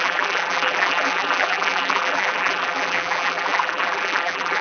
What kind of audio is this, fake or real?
fake